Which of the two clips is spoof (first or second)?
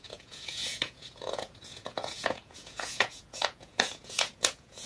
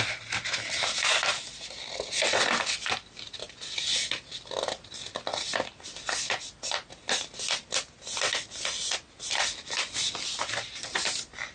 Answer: first